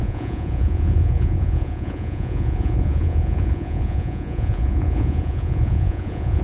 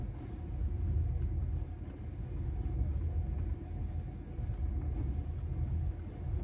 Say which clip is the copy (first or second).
first